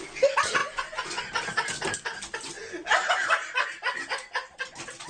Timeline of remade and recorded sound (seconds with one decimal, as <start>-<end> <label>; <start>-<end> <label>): 0.0-0.6 recorded; 0.6-1.2 remade; 1.2-5.1 recorded